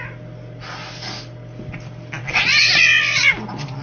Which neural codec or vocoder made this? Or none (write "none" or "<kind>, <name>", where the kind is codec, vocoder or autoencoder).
none